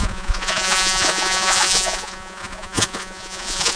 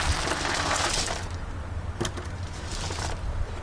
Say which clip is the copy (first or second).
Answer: first